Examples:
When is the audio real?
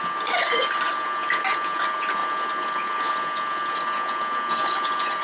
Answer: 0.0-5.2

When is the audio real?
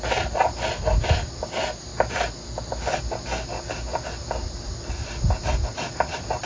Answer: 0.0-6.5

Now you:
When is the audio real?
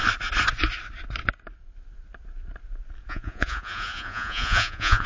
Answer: 0.0-3.1